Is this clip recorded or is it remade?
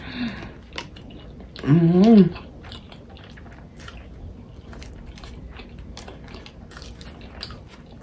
recorded